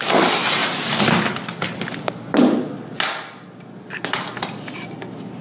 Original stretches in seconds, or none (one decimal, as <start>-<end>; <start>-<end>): 0.0-0.6; 2.4-5.4